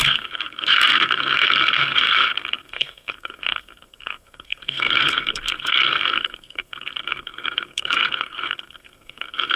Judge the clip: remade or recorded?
remade